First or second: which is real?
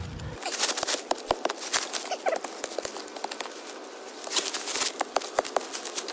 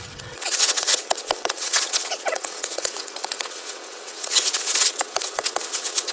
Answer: first